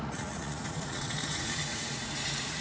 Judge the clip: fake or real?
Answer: fake